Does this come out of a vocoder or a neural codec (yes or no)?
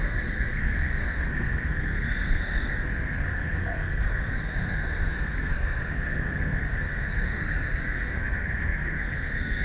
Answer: yes